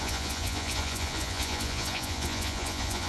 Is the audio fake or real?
fake